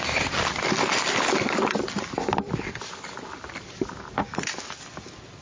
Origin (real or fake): real